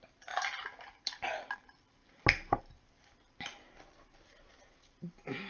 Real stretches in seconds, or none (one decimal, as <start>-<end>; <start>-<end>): 0.0-5.5